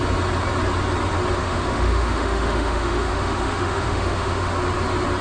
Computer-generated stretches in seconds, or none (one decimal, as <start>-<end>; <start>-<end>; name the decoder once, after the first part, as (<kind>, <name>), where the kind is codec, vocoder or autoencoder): 1.4-4.5 (autoencoder, DAC-VAE)